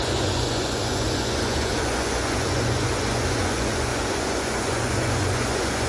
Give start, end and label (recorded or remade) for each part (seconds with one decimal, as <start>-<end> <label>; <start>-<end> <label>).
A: 0.0-5.9 remade